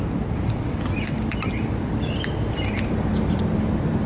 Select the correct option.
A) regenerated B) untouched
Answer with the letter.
A